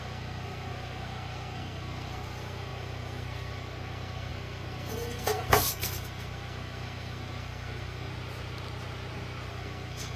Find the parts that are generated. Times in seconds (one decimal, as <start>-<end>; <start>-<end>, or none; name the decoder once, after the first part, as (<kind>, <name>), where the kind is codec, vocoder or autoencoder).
0.0-8.1 (codec, SNAC); 9.5-10.2